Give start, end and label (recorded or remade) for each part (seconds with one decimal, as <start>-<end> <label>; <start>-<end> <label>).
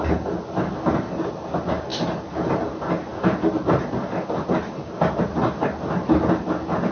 0.0-6.9 recorded